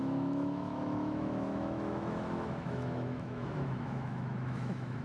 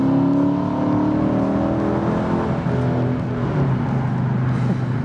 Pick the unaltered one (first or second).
second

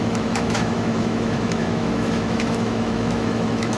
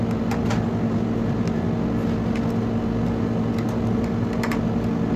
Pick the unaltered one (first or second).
second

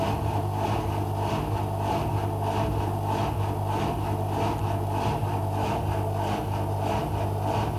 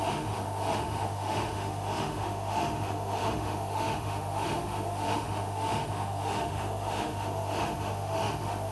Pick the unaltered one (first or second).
first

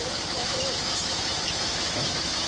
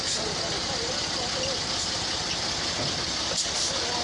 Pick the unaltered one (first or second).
second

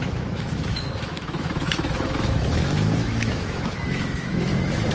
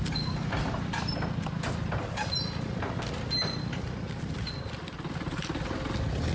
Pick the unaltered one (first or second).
second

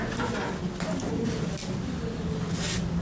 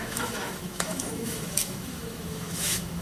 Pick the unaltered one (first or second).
first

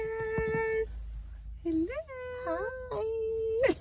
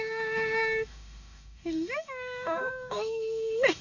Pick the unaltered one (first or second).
first